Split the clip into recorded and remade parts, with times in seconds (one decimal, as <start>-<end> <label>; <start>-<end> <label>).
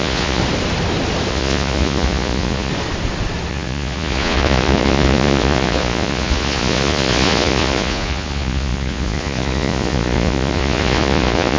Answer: 0.0-0.4 remade; 0.4-1.3 recorded; 1.3-2.7 remade; 2.7-3.5 recorded; 3.5-11.6 remade